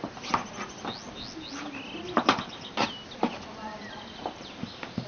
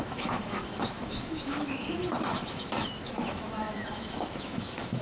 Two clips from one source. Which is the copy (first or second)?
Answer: second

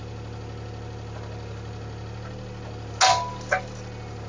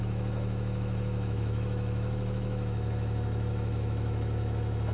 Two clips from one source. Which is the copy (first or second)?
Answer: second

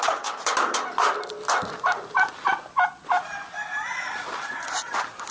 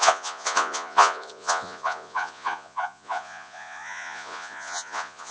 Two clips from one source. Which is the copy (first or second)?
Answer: second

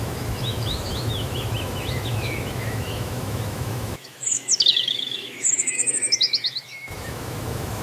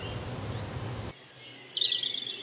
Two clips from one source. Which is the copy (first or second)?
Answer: first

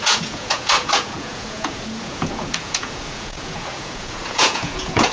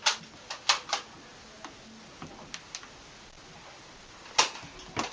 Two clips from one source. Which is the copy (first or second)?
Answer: first